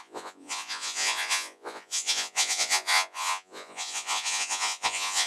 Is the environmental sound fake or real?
fake